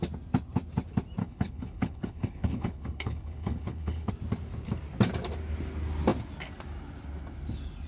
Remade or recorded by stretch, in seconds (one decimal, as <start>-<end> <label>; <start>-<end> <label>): 0.0-1.2 recorded; 1.2-4.1 remade; 4.1-7.9 recorded